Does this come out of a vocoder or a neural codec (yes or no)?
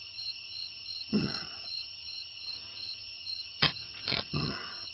yes